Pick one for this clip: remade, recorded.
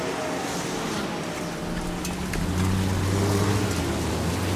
recorded